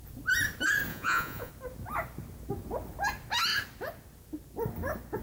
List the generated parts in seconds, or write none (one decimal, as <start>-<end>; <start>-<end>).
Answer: 0.9-1.5